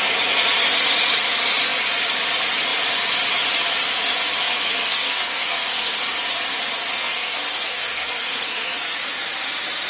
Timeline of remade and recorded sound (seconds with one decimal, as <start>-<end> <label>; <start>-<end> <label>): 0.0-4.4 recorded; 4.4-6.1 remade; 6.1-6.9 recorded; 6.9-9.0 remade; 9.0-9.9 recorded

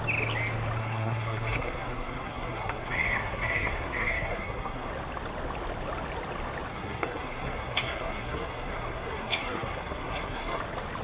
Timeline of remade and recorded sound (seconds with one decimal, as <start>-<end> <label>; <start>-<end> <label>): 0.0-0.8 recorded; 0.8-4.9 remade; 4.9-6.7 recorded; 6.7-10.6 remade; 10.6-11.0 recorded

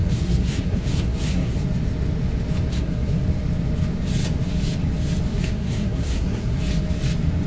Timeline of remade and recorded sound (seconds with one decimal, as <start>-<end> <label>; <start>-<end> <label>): 0.0-1.6 remade; 1.6-2.7 recorded; 2.7-3.2 remade; 3.2-5.3 recorded; 5.3-6.6 remade; 6.6-7.5 recorded

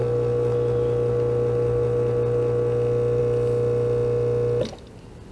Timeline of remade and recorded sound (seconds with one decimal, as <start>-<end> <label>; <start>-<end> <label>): 0.0-5.3 recorded

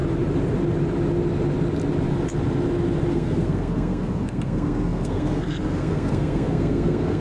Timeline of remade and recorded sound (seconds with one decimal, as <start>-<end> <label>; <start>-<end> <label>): 0.0-3.1 recorded; 3.1-7.2 remade

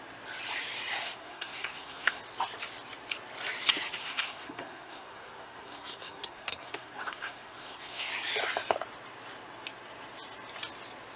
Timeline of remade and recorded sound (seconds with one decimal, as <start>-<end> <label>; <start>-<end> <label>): 0.0-1.0 recorded; 1.0-2.2 remade; 2.2-4.0 recorded; 4.0-8.1 remade; 8.1-11.2 recorded